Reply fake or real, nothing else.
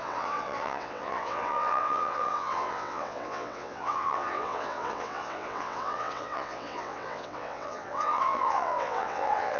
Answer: fake